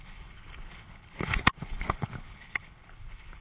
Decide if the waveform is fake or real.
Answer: fake